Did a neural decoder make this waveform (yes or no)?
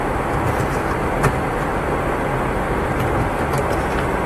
yes